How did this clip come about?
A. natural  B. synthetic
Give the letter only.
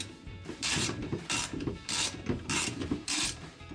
B